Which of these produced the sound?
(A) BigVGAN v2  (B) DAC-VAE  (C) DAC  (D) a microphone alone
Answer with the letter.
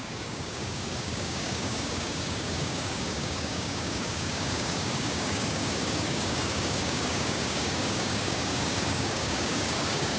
C